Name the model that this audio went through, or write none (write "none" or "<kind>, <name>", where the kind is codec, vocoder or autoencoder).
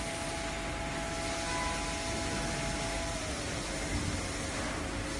none